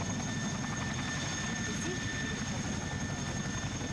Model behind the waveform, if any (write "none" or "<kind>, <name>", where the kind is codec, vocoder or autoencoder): none